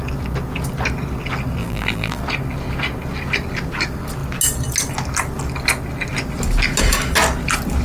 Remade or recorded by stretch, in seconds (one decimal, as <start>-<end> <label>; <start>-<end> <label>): 0.0-1.6 recorded; 1.6-2.2 remade; 2.2-7.8 recorded